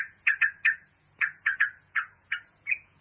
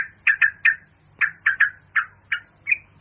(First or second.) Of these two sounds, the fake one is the first